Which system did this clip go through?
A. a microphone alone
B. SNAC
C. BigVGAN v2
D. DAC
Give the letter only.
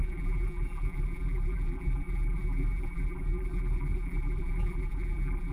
C